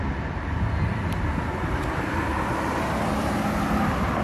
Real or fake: fake